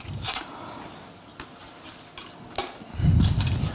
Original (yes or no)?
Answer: yes